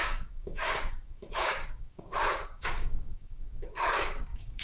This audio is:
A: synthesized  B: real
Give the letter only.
A